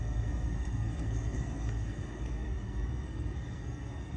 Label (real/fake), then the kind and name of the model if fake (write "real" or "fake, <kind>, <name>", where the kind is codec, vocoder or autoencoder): fake, codec, SNAC